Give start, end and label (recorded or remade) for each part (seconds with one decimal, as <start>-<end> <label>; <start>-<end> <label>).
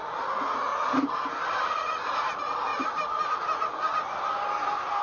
0.0-5.0 recorded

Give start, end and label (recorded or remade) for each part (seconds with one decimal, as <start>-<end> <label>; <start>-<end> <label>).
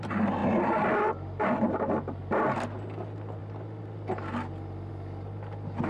0.0-5.9 recorded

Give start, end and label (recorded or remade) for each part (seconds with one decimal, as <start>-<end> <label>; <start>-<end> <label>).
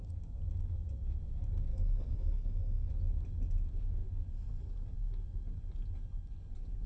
0.0-1.7 recorded; 1.7-2.9 remade; 2.9-6.9 recorded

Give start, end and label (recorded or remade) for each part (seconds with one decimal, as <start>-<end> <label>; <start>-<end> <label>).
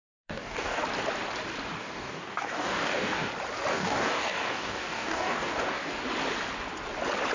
0.0-0.8 remade; 0.8-1.8 recorded; 1.8-3.3 remade; 3.3-3.7 recorded; 3.7-6.0 remade; 6.0-7.3 recorded